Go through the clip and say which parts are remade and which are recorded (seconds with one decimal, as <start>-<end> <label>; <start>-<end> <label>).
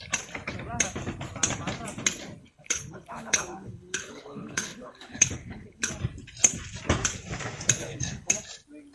0.0-2.4 recorded; 2.4-5.9 remade; 5.9-7.8 recorded; 7.8-8.3 remade; 8.3-8.9 recorded